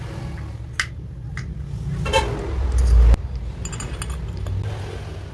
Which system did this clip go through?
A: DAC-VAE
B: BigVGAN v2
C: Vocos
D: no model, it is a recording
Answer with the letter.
D